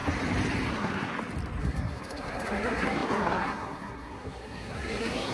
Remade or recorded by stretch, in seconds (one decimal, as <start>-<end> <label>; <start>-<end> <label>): 0.0-0.7 recorded; 0.7-1.1 remade; 1.1-1.6 recorded; 1.6-5.3 remade